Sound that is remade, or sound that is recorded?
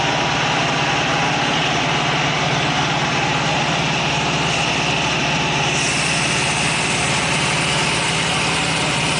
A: recorded